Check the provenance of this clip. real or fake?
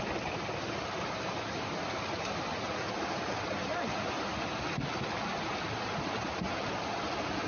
real